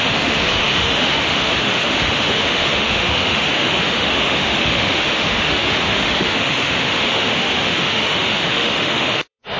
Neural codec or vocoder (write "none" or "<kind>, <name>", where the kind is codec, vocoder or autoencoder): autoencoder, DAC-VAE